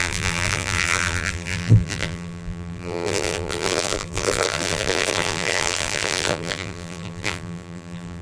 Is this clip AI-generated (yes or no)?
yes